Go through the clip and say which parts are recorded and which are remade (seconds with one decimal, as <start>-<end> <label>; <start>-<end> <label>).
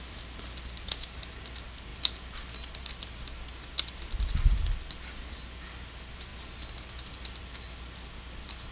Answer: 0.0-8.7 recorded